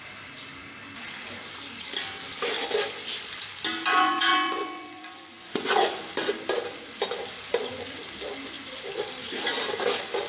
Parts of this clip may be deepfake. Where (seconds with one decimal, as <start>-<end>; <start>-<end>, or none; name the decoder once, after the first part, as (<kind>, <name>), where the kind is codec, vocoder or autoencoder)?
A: 3.9-6.0 (vocoder, Vocos)